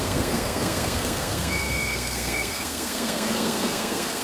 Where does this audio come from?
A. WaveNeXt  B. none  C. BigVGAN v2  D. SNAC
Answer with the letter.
D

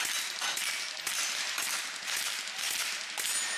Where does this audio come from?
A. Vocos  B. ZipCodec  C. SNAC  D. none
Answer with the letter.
D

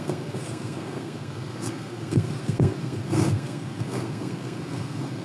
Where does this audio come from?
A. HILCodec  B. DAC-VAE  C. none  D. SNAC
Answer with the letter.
D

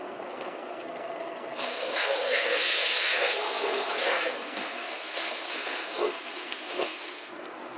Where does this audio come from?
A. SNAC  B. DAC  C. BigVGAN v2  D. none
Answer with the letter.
A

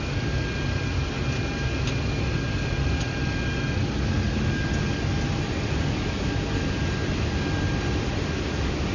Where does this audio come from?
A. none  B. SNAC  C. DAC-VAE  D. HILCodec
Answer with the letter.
A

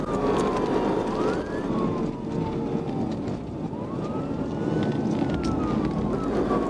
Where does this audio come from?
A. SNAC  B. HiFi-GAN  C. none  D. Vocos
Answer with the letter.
C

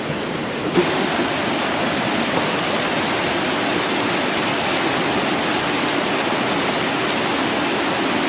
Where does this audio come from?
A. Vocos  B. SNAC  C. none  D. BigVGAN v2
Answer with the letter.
C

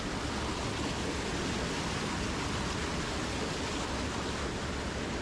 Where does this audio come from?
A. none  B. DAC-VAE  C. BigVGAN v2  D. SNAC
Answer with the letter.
A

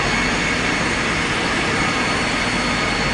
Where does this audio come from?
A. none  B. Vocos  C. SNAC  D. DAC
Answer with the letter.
A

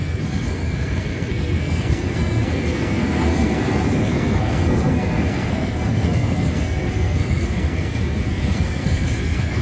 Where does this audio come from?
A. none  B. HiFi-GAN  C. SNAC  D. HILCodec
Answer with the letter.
C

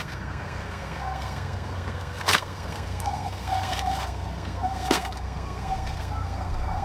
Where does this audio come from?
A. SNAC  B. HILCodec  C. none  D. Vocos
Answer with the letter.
A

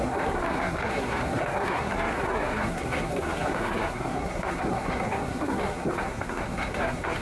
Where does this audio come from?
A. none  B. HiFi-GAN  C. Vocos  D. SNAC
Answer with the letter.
D